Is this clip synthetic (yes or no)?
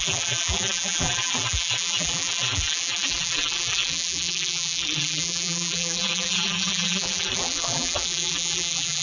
yes